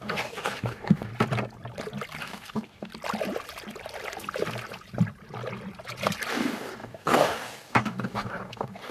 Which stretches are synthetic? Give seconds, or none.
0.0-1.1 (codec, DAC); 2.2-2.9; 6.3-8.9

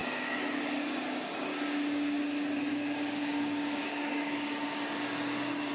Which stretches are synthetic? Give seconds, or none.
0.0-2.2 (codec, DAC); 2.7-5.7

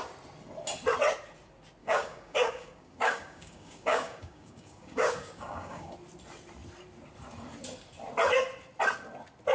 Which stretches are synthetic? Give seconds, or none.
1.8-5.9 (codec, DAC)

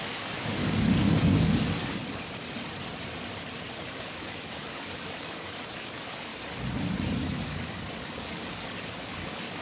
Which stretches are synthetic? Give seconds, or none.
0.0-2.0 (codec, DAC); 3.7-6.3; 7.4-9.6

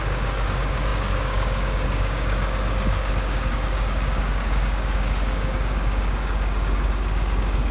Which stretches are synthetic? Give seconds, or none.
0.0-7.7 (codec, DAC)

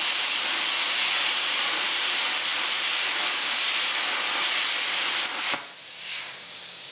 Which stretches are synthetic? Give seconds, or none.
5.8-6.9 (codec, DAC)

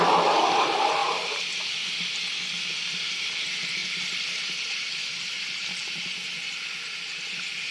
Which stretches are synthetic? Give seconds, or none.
none